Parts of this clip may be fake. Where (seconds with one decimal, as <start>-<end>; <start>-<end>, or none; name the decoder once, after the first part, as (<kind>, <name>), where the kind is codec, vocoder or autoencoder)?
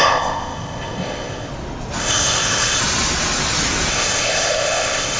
0.0-1.5 (codec, ZipCodec); 2.0-2.8; 3.9-5.2